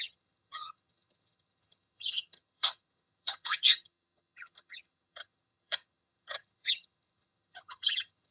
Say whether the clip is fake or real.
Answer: fake